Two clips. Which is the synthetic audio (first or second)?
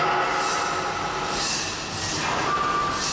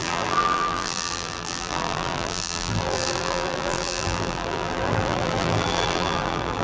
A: second